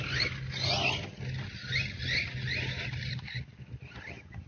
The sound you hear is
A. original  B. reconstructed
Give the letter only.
A